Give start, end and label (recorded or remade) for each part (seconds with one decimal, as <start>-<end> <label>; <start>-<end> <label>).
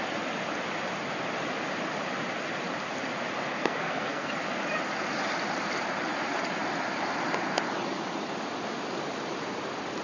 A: 0.0-3.5 recorded; 3.5-4.3 remade; 4.3-10.0 recorded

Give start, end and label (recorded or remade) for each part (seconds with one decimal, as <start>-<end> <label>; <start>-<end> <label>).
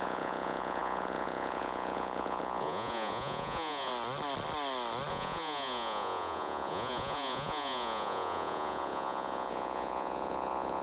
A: 0.0-3.9 remade; 3.9-5.1 recorded; 5.1-10.8 remade